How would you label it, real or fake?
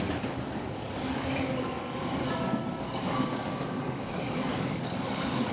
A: fake